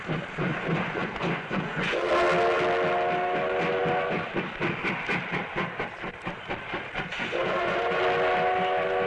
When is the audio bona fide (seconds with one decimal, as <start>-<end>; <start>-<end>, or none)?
0.0-0.5; 2.1-7.1; 8.0-9.1